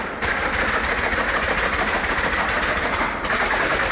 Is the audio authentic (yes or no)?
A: yes